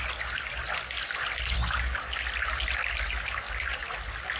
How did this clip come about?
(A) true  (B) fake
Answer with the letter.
A